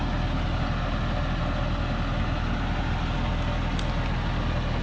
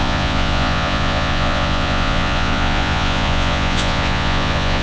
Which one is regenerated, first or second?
second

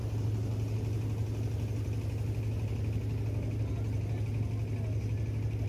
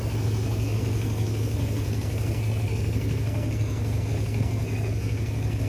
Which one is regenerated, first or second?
second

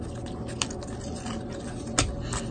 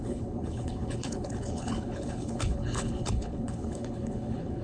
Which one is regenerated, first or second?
second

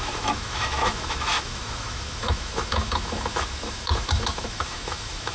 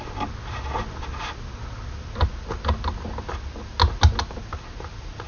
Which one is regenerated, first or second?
first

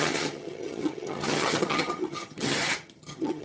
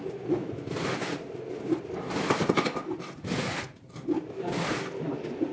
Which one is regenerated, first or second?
first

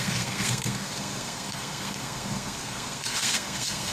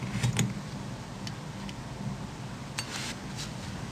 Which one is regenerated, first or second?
first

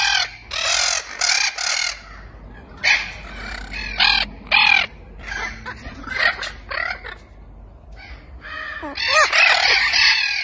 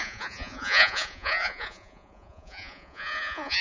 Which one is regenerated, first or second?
second